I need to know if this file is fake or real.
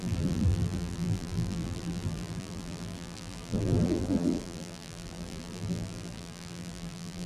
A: fake